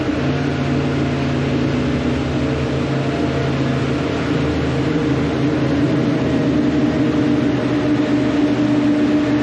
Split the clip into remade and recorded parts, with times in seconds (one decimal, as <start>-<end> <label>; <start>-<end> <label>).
0.0-9.4 recorded